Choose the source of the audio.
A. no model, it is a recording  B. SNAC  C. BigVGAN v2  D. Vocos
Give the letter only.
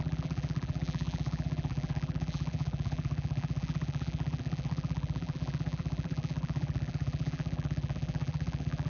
C